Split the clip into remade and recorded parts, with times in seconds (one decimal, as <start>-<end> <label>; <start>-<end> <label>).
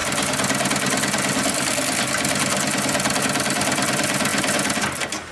0.0-5.3 recorded